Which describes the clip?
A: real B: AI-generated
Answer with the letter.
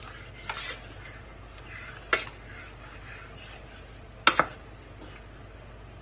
A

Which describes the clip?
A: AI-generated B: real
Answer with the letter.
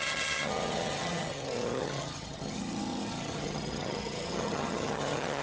A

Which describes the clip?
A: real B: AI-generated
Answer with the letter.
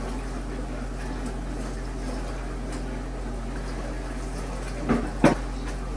A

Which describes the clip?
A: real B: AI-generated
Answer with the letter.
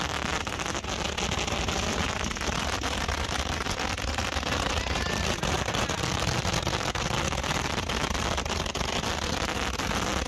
A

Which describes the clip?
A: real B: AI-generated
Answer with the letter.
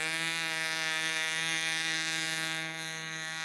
B